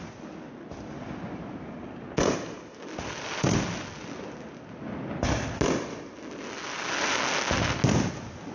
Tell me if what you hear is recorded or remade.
recorded